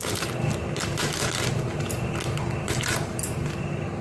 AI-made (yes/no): no